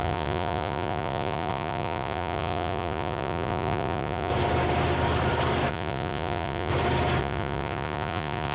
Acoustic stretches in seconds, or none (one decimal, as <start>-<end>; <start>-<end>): 4.3-5.7; 6.7-7.2